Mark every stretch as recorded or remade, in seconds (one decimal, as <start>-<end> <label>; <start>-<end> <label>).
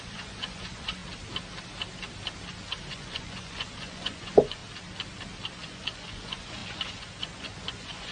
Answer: 0.0-1.0 remade; 1.0-2.9 recorded; 2.9-4.6 remade; 4.6-5.5 recorded; 5.5-8.1 remade